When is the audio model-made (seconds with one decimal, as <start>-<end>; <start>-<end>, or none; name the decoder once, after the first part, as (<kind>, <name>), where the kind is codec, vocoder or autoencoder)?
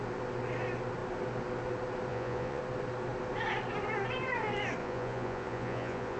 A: 2.1-2.6 (vocoder, Vocos); 4.8-6.2